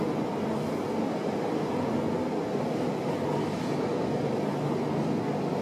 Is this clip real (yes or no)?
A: yes